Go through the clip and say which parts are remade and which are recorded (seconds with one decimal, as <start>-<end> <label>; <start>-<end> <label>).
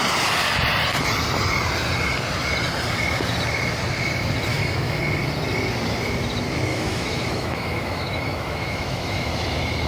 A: 0.0-4.5 recorded; 4.5-5.0 remade; 5.0-6.7 recorded; 6.7-9.3 remade; 9.3-9.9 recorded